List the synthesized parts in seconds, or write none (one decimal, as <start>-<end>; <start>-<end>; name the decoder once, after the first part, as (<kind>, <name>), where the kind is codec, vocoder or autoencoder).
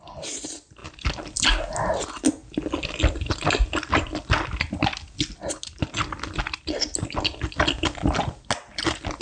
none